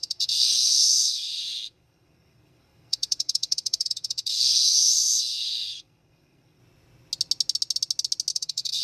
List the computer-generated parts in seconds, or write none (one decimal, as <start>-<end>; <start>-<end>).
0.0-6.6; 8.3-8.8